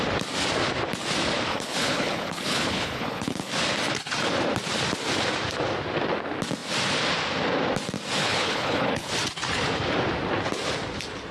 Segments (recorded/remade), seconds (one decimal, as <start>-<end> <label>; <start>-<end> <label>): 0.0-1.5 recorded; 1.5-3.5 remade; 3.5-8.2 recorded; 8.2-9.1 remade; 9.1-11.3 recorded